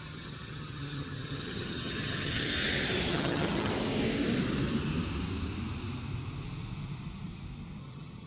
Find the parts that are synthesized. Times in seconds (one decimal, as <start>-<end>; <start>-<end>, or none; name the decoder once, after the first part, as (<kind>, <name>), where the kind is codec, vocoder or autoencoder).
0.0-2.5 (vocoder, HiFi-GAN); 3.1-3.7; 7.8-8.3